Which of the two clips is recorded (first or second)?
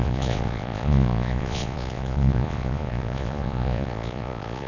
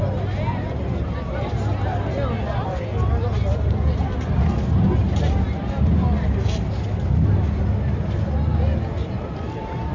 second